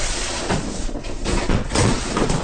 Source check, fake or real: fake